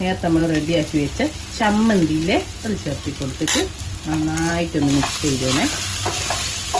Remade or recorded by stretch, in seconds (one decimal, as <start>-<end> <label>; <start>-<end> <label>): 0.0-6.8 recorded